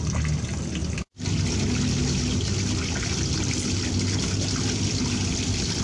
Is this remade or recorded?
recorded